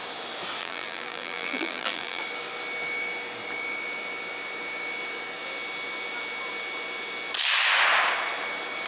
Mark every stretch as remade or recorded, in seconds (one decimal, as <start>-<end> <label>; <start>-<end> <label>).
0.0-0.6 recorded; 0.6-2.2 remade; 2.2-8.9 recorded